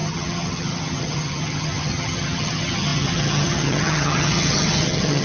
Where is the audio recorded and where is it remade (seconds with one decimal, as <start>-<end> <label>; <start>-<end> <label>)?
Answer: 0.0-5.2 remade